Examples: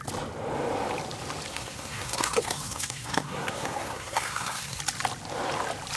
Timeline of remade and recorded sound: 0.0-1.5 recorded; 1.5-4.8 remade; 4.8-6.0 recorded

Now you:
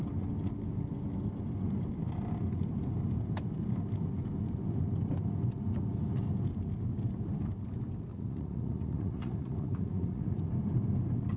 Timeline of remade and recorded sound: 0.0-8.1 recorded; 8.1-10.4 remade; 10.4-11.4 recorded

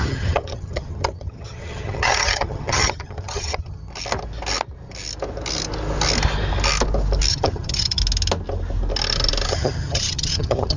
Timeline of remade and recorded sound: 0.0-3.9 remade; 3.9-7.3 recorded; 7.3-8.0 remade; 8.0-9.5 recorded; 9.5-10.8 remade

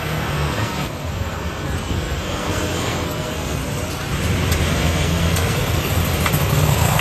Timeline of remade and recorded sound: 0.0-3.6 remade; 3.6-4.7 recorded; 4.7-6.0 remade; 6.0-6.5 recorded; 6.5-7.0 remade

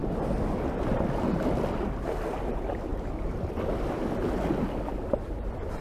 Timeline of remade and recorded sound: 0.0-5.8 recorded

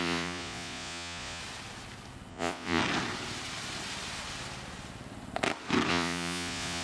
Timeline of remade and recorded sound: 0.0-1.4 remade; 1.4-2.3 recorded; 2.3-2.8 remade; 2.8-5.9 recorded; 5.9-6.8 remade